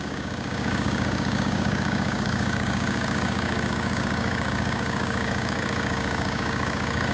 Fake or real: fake